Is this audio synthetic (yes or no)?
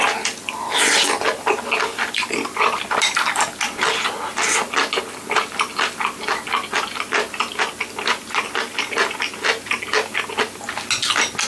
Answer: no